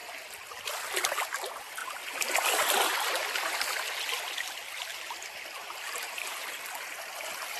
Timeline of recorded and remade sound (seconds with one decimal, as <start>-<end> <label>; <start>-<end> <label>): 0.0-7.6 recorded